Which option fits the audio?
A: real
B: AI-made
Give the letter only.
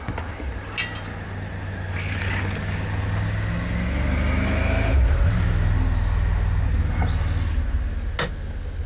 A